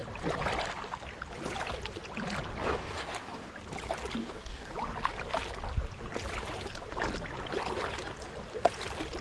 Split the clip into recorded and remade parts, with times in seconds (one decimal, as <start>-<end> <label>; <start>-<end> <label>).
0.0-2.6 recorded; 2.6-3.5 remade; 3.5-4.2 recorded; 4.2-4.7 remade; 4.7-9.2 recorded